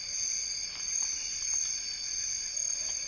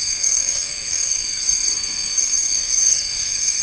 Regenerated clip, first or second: second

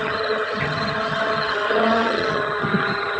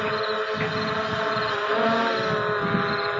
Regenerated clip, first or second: first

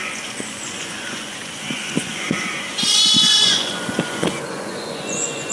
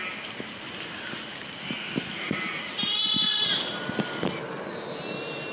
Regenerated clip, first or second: first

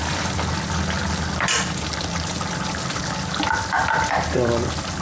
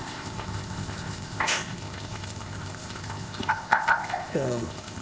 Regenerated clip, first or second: second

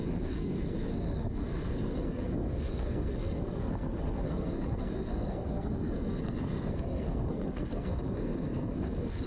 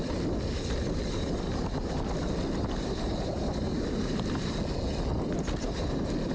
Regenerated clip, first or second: first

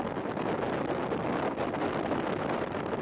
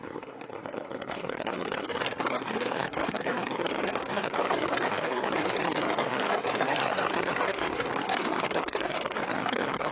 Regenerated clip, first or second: second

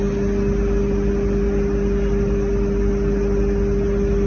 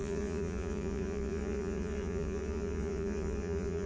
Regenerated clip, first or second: second